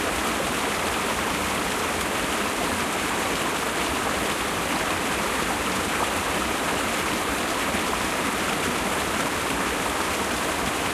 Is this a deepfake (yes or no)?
no